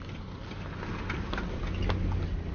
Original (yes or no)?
yes